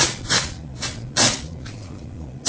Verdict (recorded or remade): remade